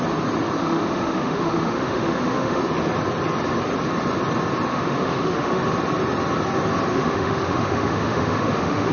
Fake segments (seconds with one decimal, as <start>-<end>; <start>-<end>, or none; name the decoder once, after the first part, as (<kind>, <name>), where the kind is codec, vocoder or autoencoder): 0.6-2.6 (autoencoder, DAC-VAE); 4.7-5.6; 6.9-8.9